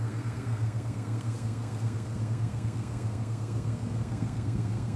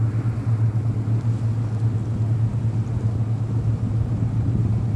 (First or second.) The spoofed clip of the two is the first